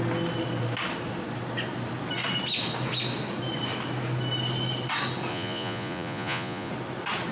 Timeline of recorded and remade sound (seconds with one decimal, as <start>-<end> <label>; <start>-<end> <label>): 0.0-5.3 recorded; 5.3-6.7 remade; 6.7-7.3 recorded